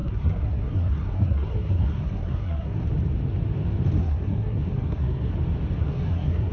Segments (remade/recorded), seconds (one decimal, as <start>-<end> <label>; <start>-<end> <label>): 0.0-2.8 remade; 2.8-4.0 recorded; 4.0-5.3 remade; 5.3-5.8 recorded; 5.8-6.5 remade